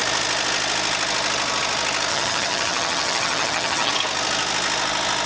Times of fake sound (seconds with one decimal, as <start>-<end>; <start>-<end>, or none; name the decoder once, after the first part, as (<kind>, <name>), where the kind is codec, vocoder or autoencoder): 2.1-3.9 (vocoder, HiFi-GAN)